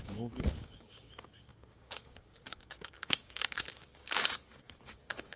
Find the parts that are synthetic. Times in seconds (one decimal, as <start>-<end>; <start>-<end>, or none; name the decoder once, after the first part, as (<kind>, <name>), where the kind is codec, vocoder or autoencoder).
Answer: 0.0-5.4 (codec, DAC)